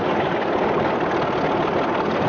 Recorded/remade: recorded